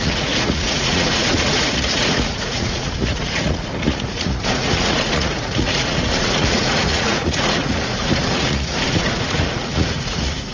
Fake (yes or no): yes